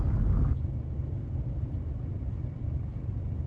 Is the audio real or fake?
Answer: real